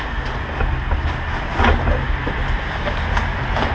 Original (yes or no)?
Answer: yes